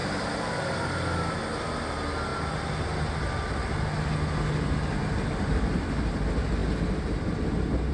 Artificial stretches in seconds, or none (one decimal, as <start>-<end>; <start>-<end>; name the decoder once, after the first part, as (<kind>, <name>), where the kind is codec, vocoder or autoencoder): none